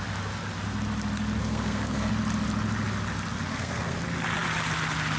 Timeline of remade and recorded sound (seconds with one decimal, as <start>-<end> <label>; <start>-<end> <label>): 0.0-1.4 recorded; 1.4-2.1 remade; 2.1-3.5 recorded; 3.5-4.0 remade; 4.0-5.2 recorded